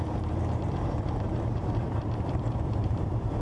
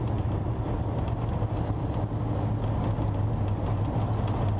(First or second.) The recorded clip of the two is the second